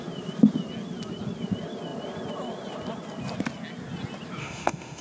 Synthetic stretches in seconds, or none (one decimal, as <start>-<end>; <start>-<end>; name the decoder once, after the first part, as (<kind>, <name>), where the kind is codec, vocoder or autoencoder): 4.4-5.0 (autoencoder, DAC-VAE)